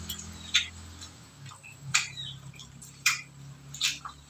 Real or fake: fake